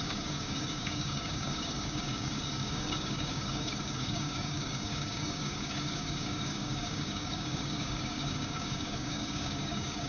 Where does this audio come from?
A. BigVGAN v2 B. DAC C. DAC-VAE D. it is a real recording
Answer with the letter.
B